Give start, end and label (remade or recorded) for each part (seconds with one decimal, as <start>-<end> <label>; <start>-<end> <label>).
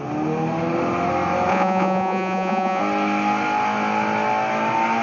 0.0-1.5 recorded; 1.5-2.8 remade; 2.8-5.0 recorded